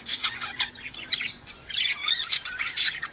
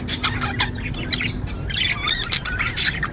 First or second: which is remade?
first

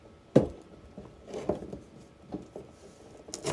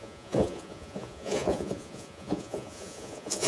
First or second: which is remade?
second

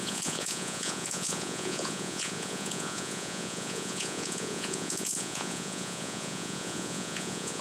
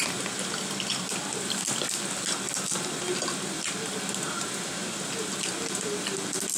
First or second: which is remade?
first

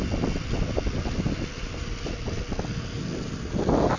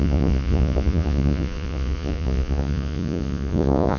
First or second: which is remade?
second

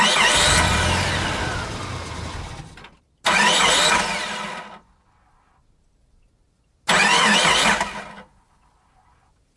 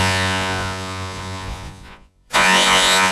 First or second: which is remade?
second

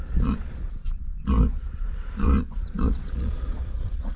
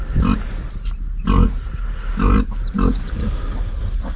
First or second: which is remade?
first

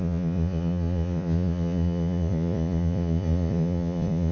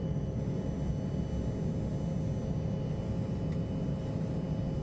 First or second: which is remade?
first